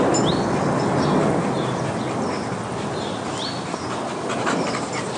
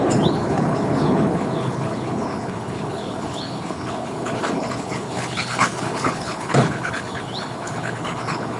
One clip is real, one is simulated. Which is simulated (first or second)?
second